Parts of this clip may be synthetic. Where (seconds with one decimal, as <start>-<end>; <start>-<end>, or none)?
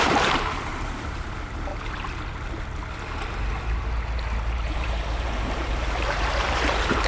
0.0-1.7; 4.5-7.1